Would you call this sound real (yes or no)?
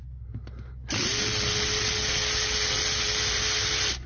yes